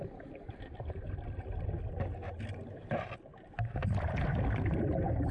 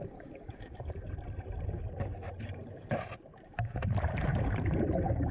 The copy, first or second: second